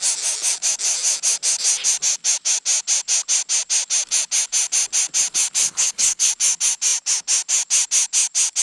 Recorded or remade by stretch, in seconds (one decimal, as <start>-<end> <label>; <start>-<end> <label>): 0.0-5.6 recorded; 5.6-6.3 remade; 6.3-8.6 recorded